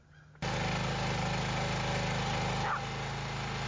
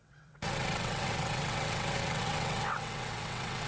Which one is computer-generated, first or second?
second